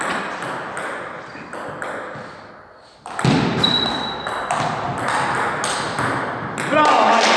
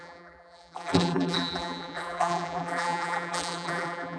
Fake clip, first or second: second